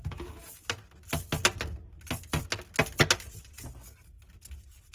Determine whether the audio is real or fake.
real